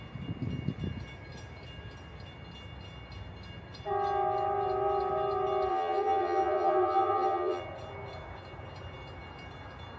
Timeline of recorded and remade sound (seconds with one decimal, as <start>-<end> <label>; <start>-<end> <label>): 0.0-5.7 recorded; 5.7-7.6 remade; 7.6-10.0 recorded